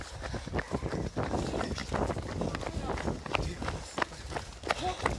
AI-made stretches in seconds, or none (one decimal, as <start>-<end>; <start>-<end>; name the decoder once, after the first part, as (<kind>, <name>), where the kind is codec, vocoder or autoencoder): none